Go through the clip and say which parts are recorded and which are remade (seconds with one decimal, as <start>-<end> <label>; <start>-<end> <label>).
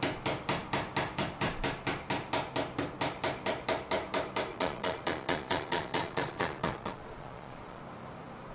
0.0-4.5 recorded; 4.5-7.8 remade; 7.8-8.5 recorded